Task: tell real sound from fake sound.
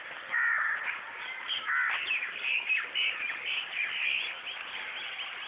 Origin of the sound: real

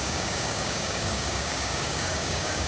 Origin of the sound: fake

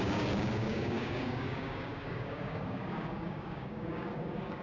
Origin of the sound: fake